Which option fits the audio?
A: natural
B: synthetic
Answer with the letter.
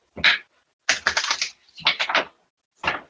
A